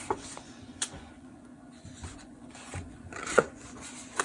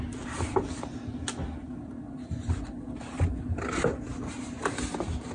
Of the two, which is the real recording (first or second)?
second